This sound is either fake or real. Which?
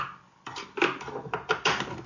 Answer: fake